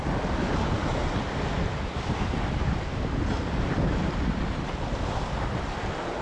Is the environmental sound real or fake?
real